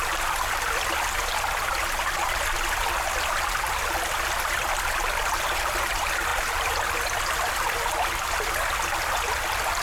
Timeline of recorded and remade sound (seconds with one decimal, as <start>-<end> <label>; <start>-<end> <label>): 0.0-9.8 recorded